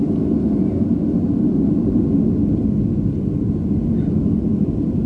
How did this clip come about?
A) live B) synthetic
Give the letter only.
A